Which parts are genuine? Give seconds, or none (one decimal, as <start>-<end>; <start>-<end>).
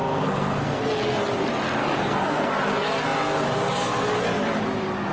0.8-1.8; 2.5-5.1